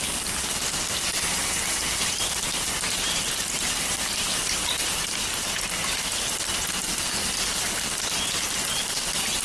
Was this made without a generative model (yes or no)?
yes